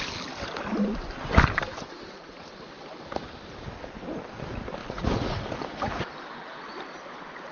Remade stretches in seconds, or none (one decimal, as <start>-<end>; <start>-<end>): 4.8-6.1